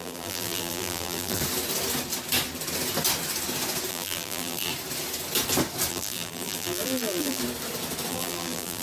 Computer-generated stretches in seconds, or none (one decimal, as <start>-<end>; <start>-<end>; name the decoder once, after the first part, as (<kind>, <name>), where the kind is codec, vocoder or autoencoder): 0.0-1.4 (vocoder, BigVGAN v2); 3.9-4.7; 5.9-7.4; 8.1-8.8